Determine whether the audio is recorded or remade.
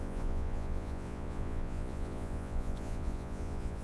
remade